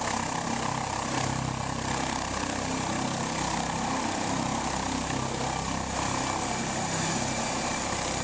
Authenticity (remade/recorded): recorded